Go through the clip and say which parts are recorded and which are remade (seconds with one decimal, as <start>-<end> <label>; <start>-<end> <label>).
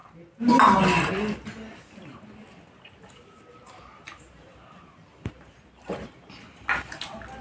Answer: 0.0-7.4 recorded